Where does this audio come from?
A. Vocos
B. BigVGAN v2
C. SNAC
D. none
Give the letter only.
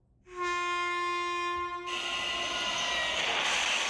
D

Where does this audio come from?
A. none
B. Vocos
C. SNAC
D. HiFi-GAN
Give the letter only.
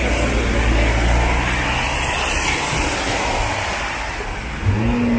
A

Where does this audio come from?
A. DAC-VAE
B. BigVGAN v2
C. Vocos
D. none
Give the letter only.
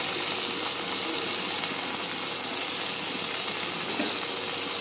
D